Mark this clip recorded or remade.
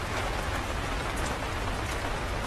remade